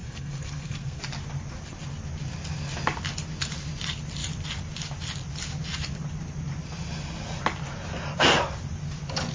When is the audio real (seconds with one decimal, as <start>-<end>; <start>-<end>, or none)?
1.0-9.3